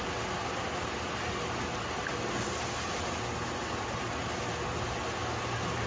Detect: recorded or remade recorded